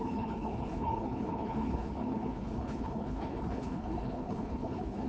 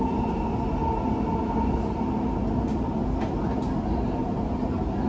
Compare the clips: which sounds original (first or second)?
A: second